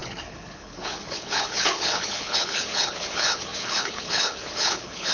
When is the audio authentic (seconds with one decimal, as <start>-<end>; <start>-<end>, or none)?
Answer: none